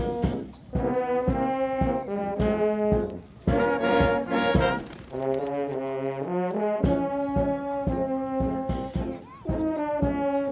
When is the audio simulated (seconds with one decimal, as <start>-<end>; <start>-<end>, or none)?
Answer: none